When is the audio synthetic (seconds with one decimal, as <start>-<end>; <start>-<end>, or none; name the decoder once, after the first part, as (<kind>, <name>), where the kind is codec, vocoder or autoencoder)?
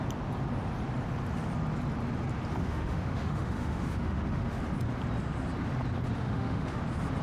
2.6-4.6 (autoencoder, DAC-VAE); 6.2-6.8